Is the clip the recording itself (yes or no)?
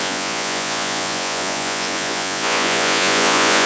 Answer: no